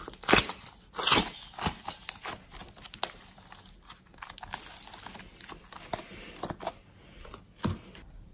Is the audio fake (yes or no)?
no